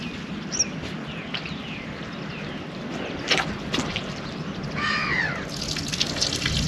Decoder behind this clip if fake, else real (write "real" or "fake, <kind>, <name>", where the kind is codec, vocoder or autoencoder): real